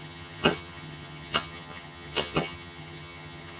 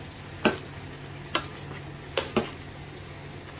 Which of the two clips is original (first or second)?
second